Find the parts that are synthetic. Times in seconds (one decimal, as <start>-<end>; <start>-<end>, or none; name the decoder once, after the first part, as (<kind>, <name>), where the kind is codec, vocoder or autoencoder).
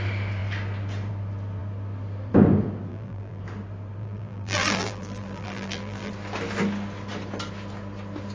2.9-3.4 (vocoder, BigVGAN v2); 4.0-6.1